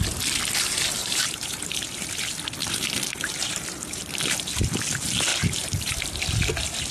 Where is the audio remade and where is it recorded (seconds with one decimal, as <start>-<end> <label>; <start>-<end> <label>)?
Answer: 0.0-1.0 recorded; 1.0-1.7 remade; 1.7-2.6 recorded; 2.6-4.1 remade; 4.1-5.3 recorded; 5.3-6.0 remade; 6.0-6.9 recorded